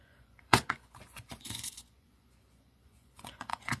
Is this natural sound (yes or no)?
no